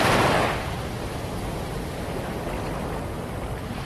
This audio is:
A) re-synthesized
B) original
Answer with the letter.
A